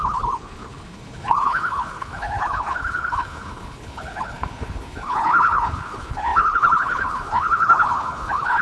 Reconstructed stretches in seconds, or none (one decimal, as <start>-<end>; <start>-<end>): 0.0-8.6